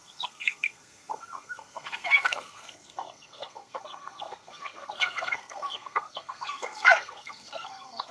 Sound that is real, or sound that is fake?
fake